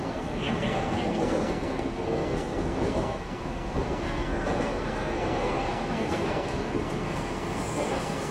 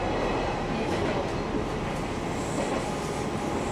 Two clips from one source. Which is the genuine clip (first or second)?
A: second